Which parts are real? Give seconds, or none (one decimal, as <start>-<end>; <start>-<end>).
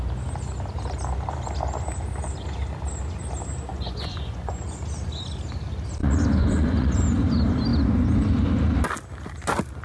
0.0-3.7; 4.6-6.0; 6.9-9.8